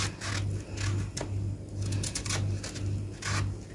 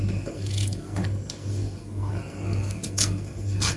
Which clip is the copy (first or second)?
second